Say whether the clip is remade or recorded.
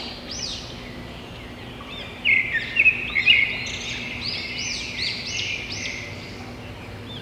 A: recorded